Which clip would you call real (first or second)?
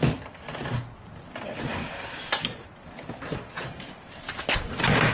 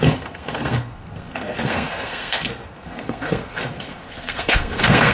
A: first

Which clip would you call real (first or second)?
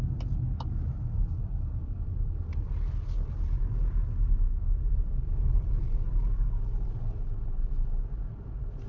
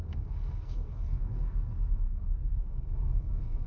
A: first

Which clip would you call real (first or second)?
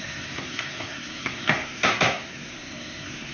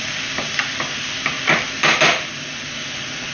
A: second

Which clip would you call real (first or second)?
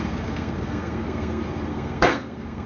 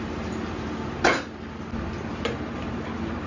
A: second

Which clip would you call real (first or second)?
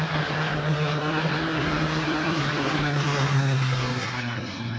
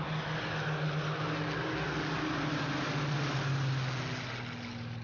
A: second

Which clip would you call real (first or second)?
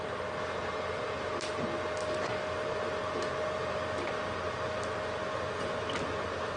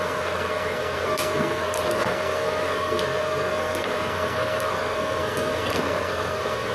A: first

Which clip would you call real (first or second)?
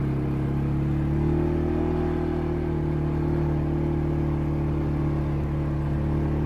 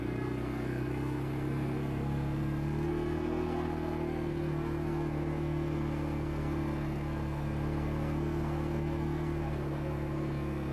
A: first